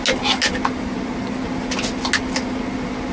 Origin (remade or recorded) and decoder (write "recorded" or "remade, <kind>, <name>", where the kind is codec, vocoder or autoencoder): recorded